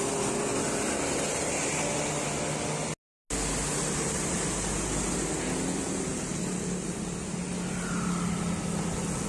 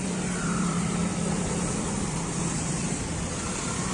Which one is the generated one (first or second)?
second